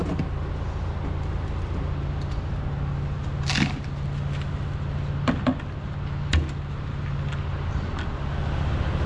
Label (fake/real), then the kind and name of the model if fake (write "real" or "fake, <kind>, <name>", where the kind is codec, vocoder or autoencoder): real